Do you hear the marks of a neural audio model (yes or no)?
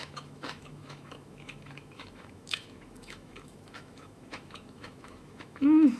yes